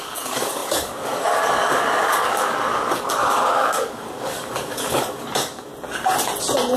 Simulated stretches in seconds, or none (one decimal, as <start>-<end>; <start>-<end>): 0.0-5.7